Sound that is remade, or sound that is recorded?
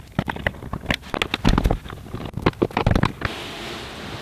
recorded